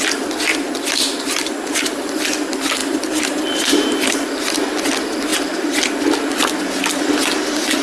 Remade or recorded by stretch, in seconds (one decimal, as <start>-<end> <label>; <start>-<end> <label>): 0.0-0.5 recorded; 0.5-1.7 remade; 1.7-2.8 recorded; 2.8-4.4 remade; 4.4-5.3 recorded; 5.3-6.2 remade; 6.2-7.8 recorded